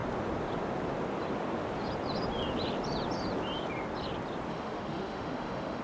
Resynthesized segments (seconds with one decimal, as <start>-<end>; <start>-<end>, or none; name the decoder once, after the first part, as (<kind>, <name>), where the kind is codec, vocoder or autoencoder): 4.5-5.8 (autoencoder, DAC-VAE)